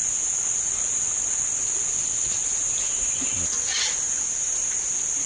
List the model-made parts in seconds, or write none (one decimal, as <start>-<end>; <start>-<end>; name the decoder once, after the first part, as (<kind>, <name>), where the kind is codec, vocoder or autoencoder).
none

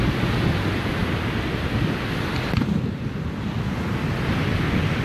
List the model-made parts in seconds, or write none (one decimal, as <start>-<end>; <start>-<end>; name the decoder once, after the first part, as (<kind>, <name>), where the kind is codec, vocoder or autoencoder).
none

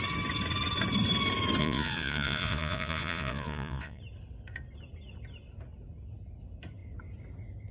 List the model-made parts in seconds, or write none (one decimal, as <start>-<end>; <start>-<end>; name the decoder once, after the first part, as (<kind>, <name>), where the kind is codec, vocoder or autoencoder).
1.6-4.0 (vocoder, Vocos)

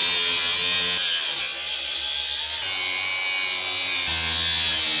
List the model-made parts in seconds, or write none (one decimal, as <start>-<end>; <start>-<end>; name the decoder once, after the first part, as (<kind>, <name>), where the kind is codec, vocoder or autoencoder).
none

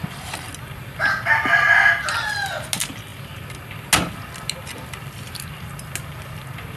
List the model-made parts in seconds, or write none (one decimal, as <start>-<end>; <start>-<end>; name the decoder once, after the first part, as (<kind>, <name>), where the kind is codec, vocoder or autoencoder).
none

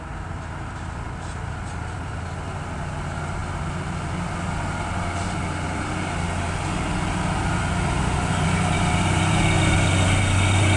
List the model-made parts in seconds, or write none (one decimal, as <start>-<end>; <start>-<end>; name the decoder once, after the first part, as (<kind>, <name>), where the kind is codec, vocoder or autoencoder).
none

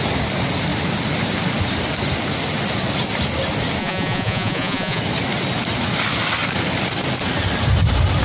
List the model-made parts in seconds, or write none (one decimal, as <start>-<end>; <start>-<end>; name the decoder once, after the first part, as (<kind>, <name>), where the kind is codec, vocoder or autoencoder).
3.8-5.0 (vocoder, Vocos)